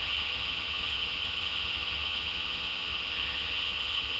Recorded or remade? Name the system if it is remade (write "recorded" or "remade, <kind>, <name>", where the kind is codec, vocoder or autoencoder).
remade, vocoder, HiFi-GAN